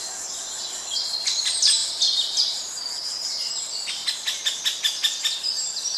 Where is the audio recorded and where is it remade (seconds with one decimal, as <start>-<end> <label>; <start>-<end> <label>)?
0.0-1.8 recorded; 1.8-3.5 remade; 3.5-6.0 recorded